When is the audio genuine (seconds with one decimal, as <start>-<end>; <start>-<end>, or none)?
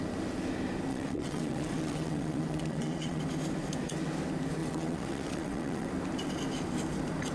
0.0-0.9; 3.2-4.6; 5.9-7.3